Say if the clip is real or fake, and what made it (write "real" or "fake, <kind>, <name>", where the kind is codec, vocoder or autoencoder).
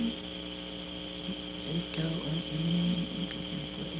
real